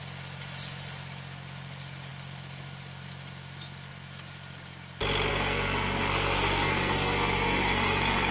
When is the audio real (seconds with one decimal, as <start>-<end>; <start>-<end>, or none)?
0.0-5.3

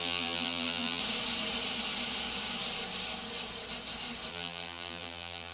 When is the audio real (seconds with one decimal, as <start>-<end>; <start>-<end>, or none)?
1.0-4.3

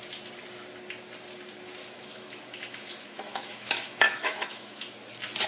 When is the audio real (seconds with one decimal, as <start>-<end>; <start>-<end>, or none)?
0.0-1.8; 5.1-5.5

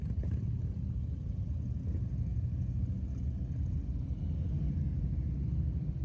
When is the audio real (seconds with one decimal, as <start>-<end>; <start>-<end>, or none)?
0.0-2.3; 2.8-6.0

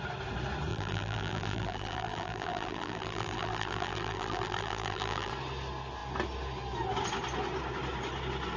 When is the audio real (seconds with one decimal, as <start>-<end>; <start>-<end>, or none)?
0.0-0.7; 5.3-8.6